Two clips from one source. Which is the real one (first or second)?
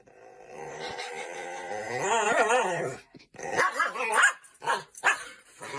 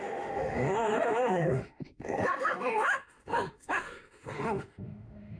first